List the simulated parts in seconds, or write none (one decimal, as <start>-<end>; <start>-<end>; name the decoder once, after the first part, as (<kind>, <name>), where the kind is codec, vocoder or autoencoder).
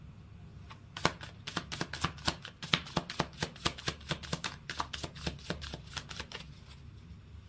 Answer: none